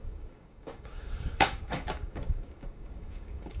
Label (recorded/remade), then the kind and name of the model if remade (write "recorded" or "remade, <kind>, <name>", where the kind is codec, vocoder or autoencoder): remade, codec, DAC